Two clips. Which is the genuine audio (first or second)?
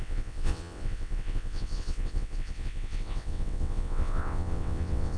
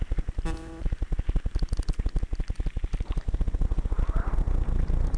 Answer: second